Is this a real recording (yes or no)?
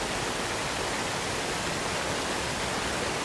yes